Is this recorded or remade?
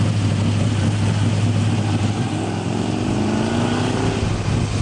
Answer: recorded